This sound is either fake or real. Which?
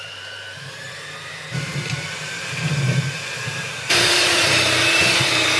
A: fake